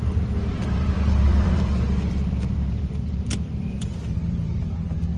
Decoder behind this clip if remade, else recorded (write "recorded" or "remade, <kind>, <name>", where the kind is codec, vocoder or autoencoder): remade, vocoder, BigVGAN v2